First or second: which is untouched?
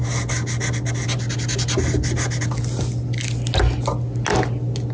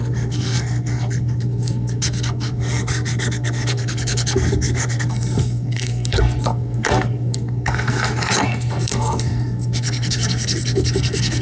first